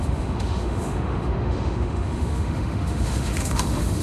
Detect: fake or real fake